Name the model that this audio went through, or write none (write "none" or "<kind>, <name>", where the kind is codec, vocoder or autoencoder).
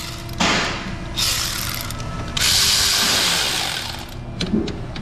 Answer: none